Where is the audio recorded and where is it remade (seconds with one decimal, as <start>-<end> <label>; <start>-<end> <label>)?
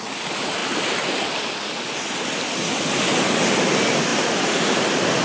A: 0.0-5.2 recorded